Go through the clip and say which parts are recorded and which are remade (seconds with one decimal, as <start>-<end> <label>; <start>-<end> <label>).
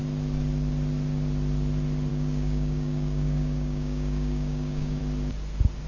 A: 0.0-2.1 recorded; 2.1-5.0 remade; 5.0-5.9 recorded